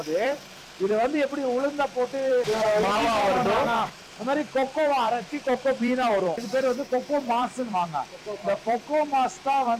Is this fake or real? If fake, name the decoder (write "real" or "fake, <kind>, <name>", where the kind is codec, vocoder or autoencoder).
fake, vocoder, BigVGAN v2